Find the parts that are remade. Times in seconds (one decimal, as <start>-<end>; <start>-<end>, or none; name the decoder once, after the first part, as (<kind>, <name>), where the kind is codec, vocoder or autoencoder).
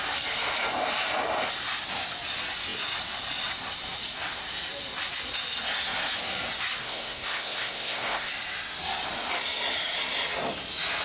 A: 6.8-8.3 (codec, SNAC)